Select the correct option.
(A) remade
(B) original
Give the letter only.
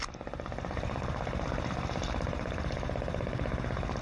B